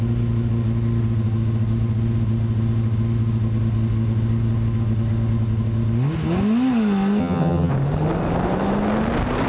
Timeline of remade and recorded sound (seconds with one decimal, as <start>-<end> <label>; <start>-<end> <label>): 0.0-7.2 recorded; 7.2-7.7 remade; 7.7-9.5 recorded